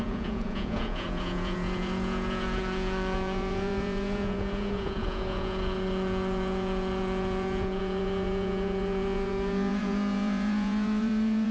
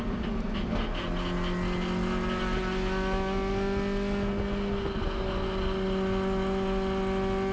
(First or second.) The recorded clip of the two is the second